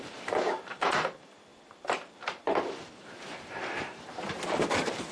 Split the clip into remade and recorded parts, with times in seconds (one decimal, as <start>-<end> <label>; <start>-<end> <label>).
0.0-1.5 remade; 1.5-2.2 recorded; 2.2-5.1 remade